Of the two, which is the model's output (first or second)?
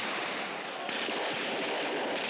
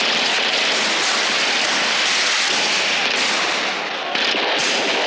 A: first